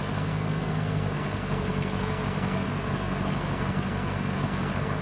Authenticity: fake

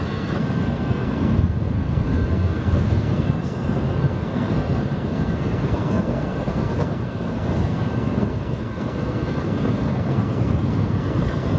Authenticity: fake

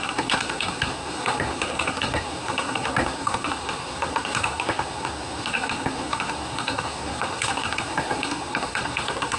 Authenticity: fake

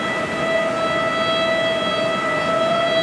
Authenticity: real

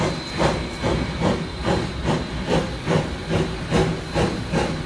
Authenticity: real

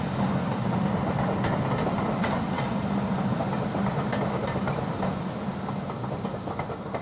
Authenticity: real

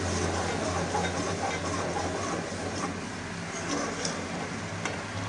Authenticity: real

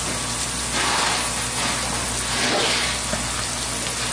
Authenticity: real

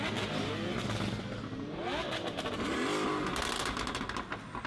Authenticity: real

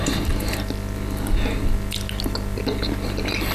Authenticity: real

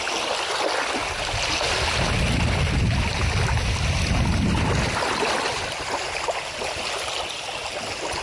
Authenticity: real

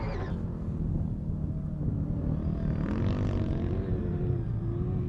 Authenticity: real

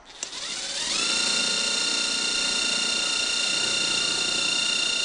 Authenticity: real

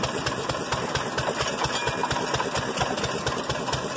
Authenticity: real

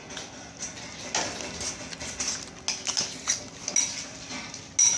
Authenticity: real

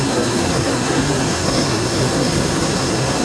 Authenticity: fake